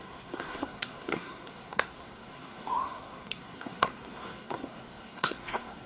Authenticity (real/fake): fake